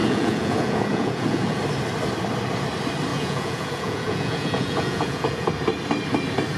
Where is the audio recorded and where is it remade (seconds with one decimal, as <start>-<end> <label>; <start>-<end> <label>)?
0.0-1.6 remade; 1.6-3.1 recorded; 3.1-5.5 remade; 5.5-6.6 recorded